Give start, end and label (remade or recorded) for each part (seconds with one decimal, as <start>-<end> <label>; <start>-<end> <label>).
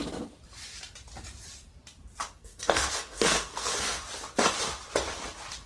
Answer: 0.0-2.4 recorded; 2.4-4.0 remade; 4.0-5.7 recorded